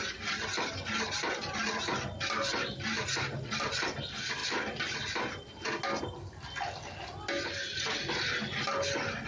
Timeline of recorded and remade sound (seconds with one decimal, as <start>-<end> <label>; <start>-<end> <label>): 0.0-9.3 recorded